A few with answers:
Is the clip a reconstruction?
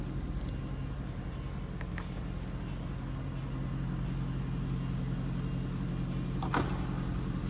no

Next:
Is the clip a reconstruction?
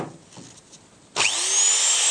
no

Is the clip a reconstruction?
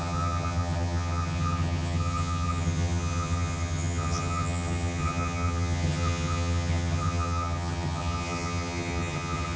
yes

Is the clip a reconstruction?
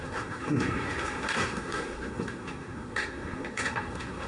yes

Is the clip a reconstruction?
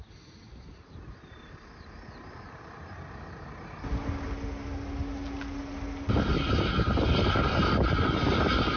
no